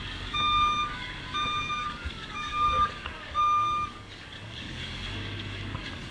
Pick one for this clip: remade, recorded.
remade